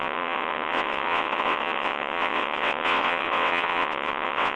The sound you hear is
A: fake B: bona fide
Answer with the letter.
A